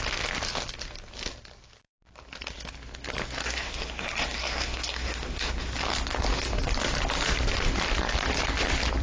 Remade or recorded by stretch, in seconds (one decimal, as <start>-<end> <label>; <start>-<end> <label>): 0.0-3.4 recorded; 3.4-5.7 remade; 5.7-9.0 recorded